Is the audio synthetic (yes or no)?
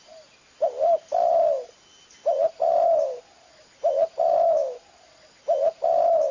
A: no